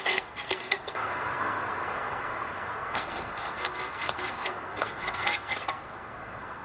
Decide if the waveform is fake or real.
fake